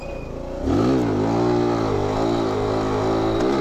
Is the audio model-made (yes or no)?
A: no